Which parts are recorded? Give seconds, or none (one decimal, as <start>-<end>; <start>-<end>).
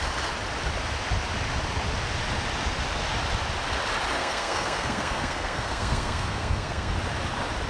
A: 0.0-4.2; 6.9-7.7